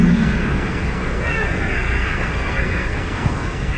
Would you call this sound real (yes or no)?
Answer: no